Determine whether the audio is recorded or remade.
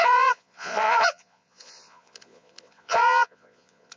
remade